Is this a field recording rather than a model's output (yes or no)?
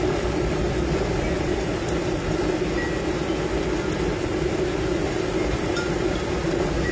yes